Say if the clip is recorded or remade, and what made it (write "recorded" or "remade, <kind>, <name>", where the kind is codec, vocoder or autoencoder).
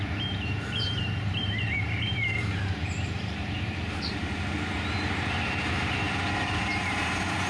remade, vocoder, BigVGAN v2